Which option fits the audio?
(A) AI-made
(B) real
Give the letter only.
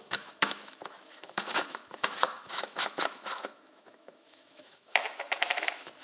A